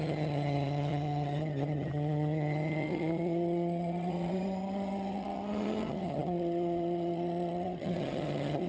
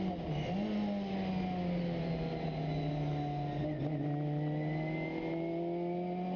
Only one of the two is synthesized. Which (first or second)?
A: first